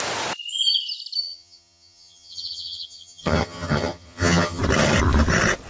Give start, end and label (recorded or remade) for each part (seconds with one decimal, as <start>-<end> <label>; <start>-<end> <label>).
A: 0.0-1.2 recorded; 1.2-4.6 remade; 4.6-5.7 recorded